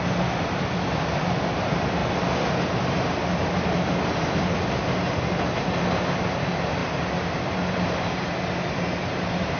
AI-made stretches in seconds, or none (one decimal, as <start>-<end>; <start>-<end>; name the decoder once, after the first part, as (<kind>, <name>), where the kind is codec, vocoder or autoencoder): none